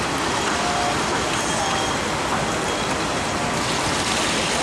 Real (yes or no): yes